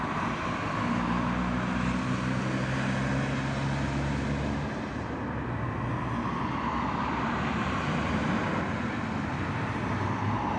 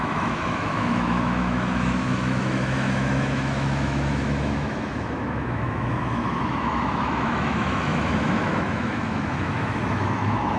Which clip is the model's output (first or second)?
second